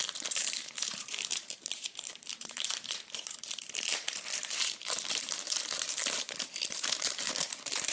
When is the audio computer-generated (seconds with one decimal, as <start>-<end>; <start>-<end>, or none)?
0.0-6.0; 6.7-7.9

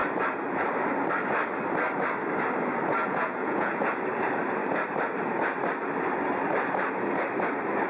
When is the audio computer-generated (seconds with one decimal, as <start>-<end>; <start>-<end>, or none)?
3.0-3.7

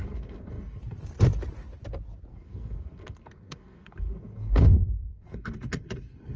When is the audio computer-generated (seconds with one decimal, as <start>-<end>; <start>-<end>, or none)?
0.0-0.8; 2.3-6.4

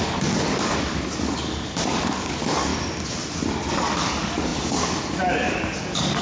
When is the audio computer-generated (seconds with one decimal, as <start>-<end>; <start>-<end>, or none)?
0.0-2.7; 3.7-6.2